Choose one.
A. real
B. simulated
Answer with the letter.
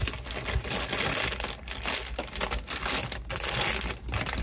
A